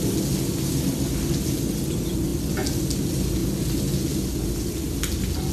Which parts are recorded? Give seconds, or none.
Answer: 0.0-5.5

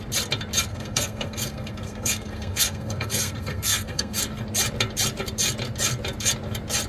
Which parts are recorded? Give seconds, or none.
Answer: 0.0-0.7; 4.2-6.9

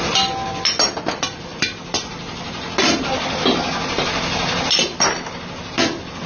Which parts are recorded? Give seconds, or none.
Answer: 0.0-6.3

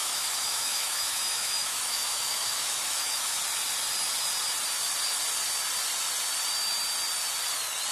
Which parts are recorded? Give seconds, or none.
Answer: 3.4-7.9

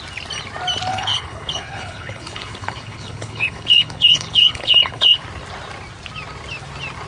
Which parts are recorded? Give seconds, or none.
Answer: 0.0-0.9; 5.2-7.1